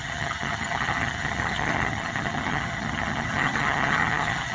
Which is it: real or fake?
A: fake